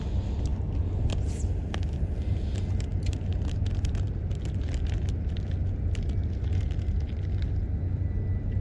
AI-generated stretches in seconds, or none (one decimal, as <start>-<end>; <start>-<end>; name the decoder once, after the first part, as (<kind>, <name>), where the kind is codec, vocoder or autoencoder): none